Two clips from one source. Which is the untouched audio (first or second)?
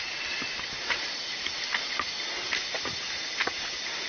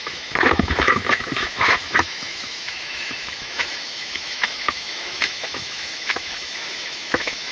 first